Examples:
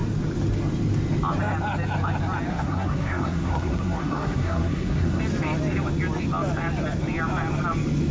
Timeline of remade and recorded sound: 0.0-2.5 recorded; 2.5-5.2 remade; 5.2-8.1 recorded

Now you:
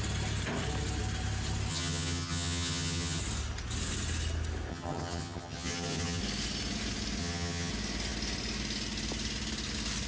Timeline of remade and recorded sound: 0.0-1.7 recorded; 1.7-3.2 remade; 3.2-4.7 recorded; 4.7-6.2 remade; 6.2-7.2 recorded; 7.2-7.7 remade; 7.7-10.1 recorded

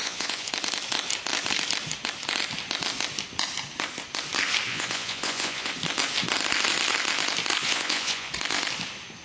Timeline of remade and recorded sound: 0.0-0.5 remade; 0.5-4.7 recorded; 4.7-5.7 remade; 5.7-7.6 recorded; 7.6-8.3 remade; 8.3-9.2 recorded

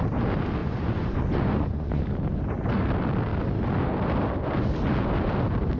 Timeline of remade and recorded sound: 0.0-0.6 recorded; 0.6-2.0 remade; 2.0-5.8 recorded

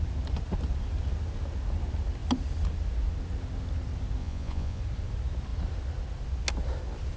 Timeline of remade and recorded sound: 0.0-4.2 recorded; 4.2-4.8 remade; 4.8-7.2 recorded